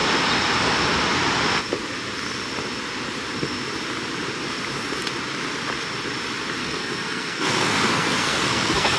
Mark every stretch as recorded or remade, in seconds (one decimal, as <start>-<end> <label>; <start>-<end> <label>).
0.0-6.6 recorded; 6.6-9.0 remade